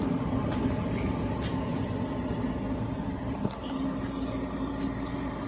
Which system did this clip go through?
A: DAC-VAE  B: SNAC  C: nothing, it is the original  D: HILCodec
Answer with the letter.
C